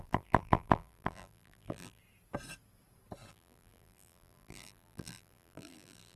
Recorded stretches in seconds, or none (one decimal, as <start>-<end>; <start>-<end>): 2.0-3.3